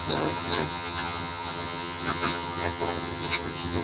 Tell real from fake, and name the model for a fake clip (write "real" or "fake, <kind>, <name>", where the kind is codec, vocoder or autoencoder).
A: fake, vocoder, HiFi-GAN